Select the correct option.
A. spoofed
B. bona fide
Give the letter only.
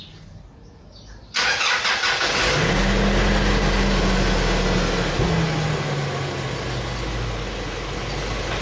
B